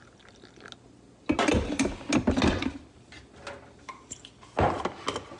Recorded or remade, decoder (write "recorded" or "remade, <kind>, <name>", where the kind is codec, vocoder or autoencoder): recorded